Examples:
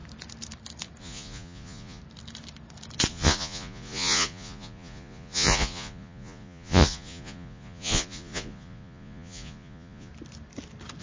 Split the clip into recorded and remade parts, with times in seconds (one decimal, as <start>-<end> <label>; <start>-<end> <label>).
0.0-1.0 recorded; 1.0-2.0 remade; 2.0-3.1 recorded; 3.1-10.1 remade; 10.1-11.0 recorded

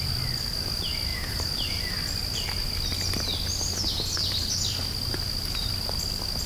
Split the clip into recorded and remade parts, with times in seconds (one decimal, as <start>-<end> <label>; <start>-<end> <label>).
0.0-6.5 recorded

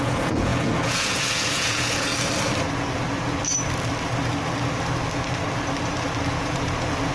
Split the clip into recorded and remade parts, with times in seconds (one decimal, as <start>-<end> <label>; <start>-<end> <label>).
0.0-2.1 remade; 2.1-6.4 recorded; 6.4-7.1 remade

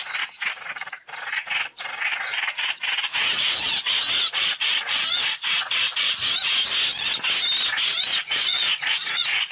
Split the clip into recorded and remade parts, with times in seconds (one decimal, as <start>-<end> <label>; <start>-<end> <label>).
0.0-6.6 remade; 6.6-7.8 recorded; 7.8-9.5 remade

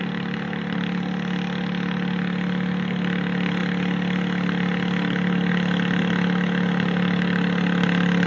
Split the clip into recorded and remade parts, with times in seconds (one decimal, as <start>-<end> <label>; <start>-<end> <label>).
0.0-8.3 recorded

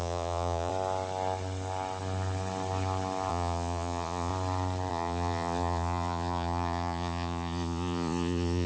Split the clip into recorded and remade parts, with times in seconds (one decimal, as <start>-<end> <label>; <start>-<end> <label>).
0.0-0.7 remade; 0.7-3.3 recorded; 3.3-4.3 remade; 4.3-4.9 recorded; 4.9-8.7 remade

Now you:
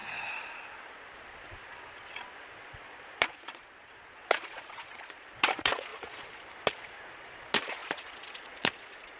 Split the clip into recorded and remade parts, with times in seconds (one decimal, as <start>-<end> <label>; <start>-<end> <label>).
0.0-9.2 remade

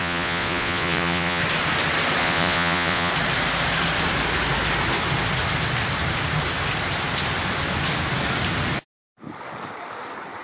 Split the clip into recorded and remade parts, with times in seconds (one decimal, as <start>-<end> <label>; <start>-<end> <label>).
0.0-1.4 remade; 1.4-2.2 recorded; 2.2-3.1 remade; 3.1-10.4 recorded